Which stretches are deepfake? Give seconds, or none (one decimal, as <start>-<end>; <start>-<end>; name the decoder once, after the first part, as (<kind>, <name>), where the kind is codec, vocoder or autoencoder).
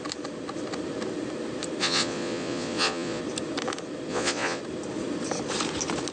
1.8-3.2 (vocoder, Vocos); 4.1-4.6